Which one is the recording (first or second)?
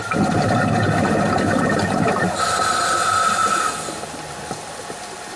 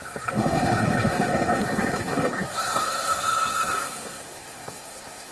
first